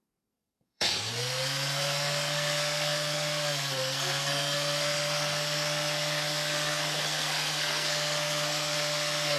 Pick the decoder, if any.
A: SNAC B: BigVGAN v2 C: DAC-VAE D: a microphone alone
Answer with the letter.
A